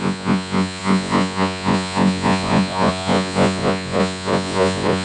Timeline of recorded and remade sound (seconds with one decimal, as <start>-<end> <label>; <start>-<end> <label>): 0.0-5.0 remade